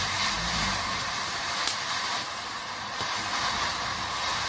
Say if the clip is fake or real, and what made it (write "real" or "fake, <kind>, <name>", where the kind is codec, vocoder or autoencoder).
fake, vocoder, BigVGAN v2